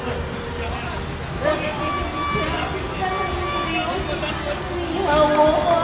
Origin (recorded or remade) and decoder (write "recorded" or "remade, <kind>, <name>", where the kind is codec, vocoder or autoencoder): recorded